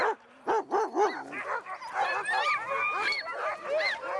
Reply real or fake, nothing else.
real